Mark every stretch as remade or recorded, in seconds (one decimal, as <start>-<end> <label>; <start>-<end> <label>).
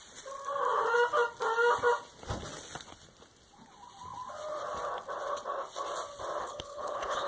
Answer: 0.0-6.4 recorded; 6.4-7.3 remade